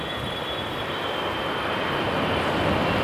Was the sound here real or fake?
real